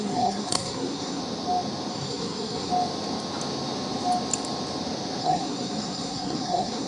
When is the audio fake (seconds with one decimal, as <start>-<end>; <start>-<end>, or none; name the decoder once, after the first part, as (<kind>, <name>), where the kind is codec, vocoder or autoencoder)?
0.0-1.2 (codec, SNAC); 1.9-2.7; 5.2-6.9